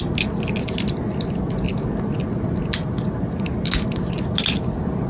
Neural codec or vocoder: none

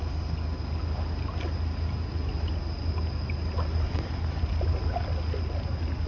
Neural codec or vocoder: none